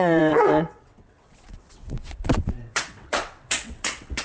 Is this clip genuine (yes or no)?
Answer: no